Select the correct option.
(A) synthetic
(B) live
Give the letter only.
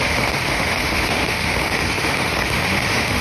A